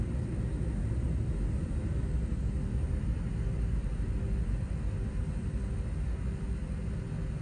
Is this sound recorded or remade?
recorded